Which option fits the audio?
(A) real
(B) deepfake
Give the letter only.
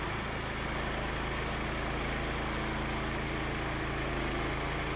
A